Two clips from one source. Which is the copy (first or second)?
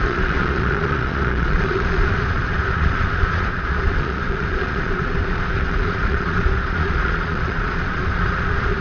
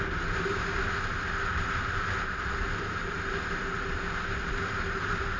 first